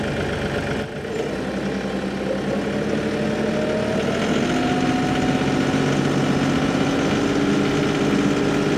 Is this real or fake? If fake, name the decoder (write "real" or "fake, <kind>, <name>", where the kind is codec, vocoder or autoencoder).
real